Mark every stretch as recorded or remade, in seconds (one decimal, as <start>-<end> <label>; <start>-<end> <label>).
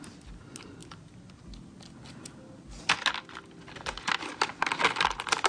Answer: 0.0-5.5 recorded